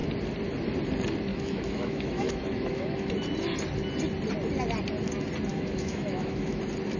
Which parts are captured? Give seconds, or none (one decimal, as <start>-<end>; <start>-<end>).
0.0-1.3; 3.1-5.5; 6.6-7.0